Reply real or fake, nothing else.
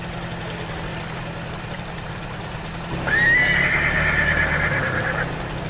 real